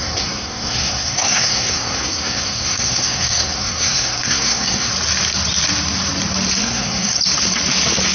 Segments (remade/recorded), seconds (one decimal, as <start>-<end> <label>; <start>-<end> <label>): 0.0-4.9 remade; 4.9-6.6 recorded; 6.6-7.2 remade; 7.2-8.1 recorded